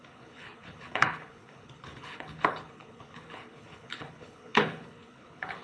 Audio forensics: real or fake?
fake